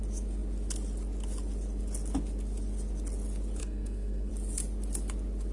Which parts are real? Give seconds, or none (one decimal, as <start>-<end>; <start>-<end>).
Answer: 0.0-3.6; 4.3-5.5